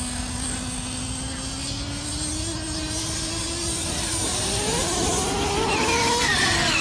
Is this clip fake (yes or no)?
no